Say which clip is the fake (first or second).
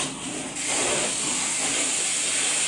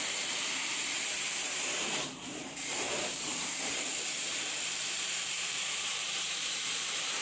second